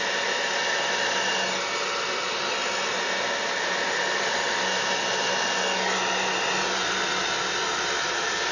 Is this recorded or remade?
recorded